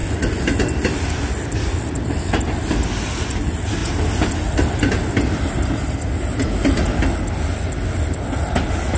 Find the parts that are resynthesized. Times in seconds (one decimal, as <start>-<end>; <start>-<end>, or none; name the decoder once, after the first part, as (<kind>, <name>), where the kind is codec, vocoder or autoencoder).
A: none